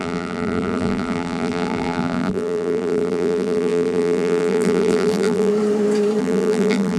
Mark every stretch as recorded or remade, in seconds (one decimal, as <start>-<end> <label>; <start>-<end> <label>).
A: 0.0-5.5 remade; 5.5-6.2 recorded; 6.2-7.0 remade